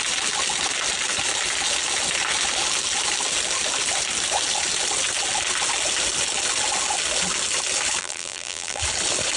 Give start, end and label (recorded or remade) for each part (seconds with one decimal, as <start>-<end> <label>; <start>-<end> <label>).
0.0-8.0 recorded; 8.0-8.8 remade; 8.8-9.4 recorded